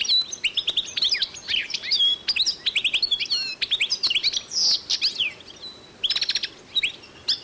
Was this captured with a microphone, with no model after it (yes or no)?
yes